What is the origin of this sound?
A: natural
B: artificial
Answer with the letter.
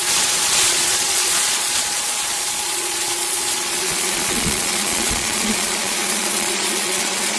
B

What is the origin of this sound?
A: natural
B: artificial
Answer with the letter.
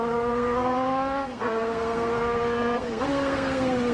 B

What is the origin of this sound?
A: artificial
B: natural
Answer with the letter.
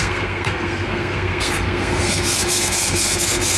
A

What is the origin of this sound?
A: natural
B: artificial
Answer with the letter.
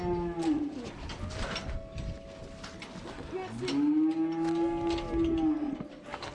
A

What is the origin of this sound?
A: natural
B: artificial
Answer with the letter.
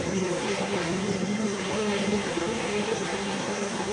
B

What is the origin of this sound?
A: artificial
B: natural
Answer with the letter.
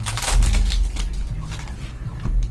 B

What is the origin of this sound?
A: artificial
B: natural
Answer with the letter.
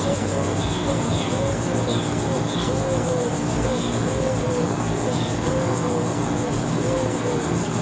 A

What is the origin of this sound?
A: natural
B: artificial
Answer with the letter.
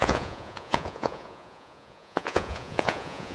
B